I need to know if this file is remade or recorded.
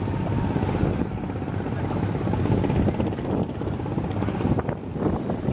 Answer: recorded